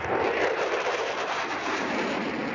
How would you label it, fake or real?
fake